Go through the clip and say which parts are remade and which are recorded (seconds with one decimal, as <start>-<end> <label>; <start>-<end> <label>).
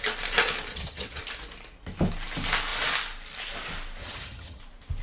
0.0-0.7 recorded; 0.7-1.2 remade; 1.2-4.0 recorded; 4.0-4.6 remade; 4.6-5.0 recorded